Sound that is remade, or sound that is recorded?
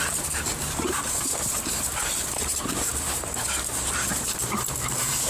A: remade